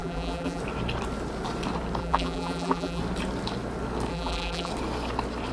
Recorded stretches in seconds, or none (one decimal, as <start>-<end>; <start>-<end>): 0.6-2.0; 3.0-4.1; 4.7-5.5